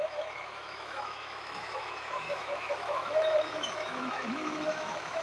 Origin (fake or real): fake